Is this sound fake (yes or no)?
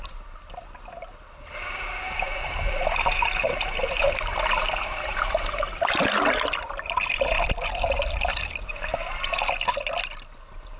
no